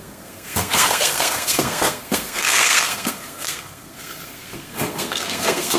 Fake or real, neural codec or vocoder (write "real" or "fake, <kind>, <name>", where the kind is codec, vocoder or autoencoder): fake, codec, SNAC